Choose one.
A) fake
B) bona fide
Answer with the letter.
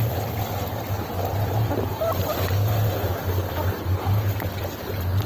B